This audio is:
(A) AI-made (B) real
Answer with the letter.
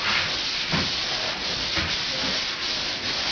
B